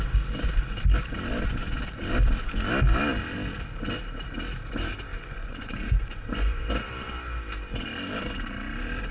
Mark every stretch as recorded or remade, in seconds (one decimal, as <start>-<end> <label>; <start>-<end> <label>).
0.0-5.1 recorded; 5.1-6.7 remade; 6.7-9.1 recorded